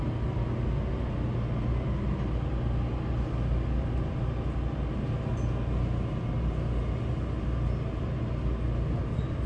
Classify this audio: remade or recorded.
recorded